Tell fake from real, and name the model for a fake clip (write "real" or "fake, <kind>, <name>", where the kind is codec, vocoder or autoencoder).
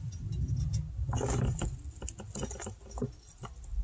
real